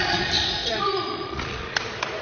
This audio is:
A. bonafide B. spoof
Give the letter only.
B